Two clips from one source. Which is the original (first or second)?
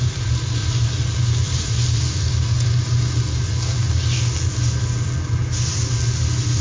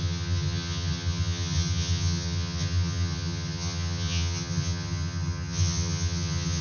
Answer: first